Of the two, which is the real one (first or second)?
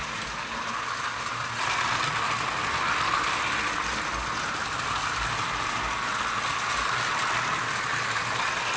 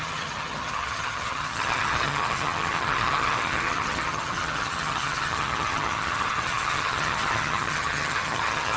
first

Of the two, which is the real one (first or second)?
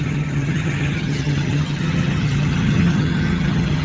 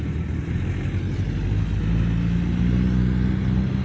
second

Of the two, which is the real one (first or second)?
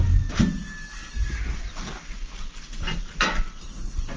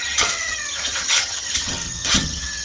first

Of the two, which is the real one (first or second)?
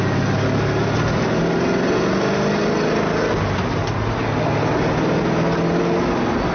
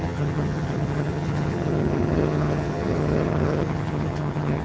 first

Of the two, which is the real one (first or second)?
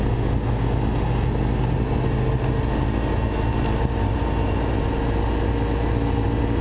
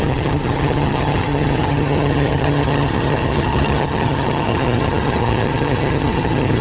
first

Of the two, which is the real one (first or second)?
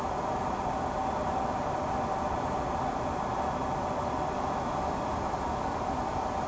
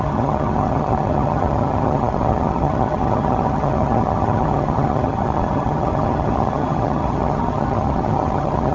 first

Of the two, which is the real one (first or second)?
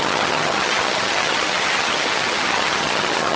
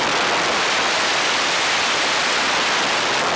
second